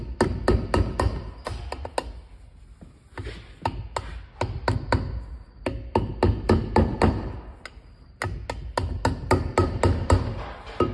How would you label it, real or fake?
real